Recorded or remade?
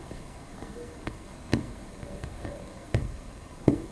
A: remade